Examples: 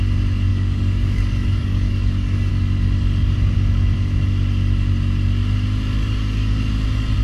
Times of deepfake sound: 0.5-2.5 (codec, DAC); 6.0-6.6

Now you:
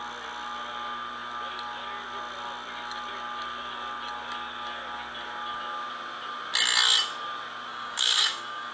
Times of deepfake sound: 7.7-8.7 (codec, DAC)

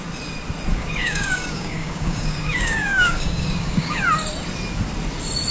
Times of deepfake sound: 0.7-4.0 (codec, DAC)

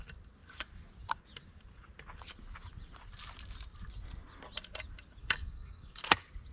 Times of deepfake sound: 5.2-6.0 (codec, DAC)

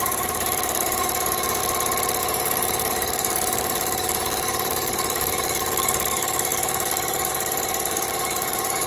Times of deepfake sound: 0.0-1.6 (codec, DAC); 2.2-8.9

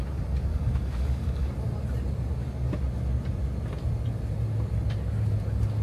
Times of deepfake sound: 0.5-1.5 (codec, DAC)

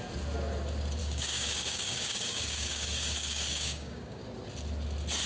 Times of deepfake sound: 1.0-4.2 (codec, DAC)

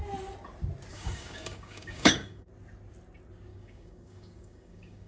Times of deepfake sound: 0.9-2.5 (codec, DAC); 3.5-5.1